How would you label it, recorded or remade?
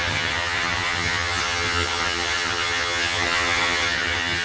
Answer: remade